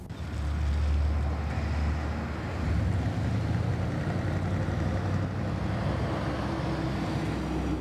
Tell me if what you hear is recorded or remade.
recorded